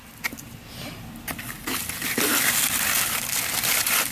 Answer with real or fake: fake